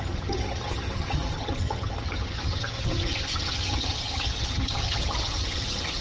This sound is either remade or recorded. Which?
remade